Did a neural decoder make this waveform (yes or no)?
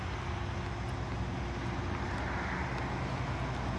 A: no